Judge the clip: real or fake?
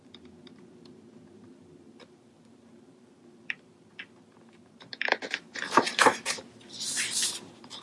fake